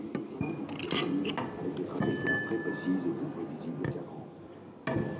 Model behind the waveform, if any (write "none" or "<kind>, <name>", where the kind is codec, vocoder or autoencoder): none